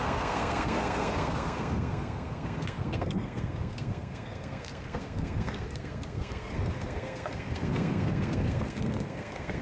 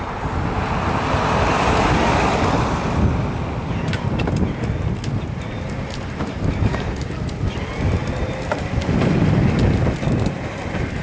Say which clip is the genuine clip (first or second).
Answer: second